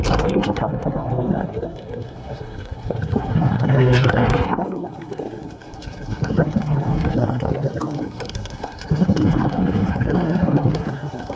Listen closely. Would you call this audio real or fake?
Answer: fake